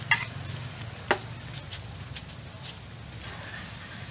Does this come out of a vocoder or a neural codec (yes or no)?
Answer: no